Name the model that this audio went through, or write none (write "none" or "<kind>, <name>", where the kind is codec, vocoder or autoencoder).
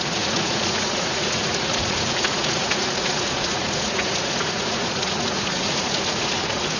vocoder, Vocos